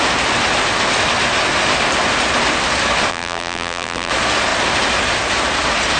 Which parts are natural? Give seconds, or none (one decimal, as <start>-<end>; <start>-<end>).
0.0-3.1; 4.1-6.0